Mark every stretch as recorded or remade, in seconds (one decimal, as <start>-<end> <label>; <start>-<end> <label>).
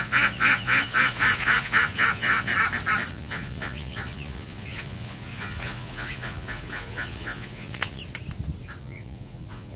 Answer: 0.0-2.5 remade; 2.5-3.1 recorded; 3.1-8.0 remade; 8.0-8.8 recorded; 8.8-9.8 remade